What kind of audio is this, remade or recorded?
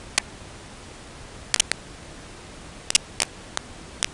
recorded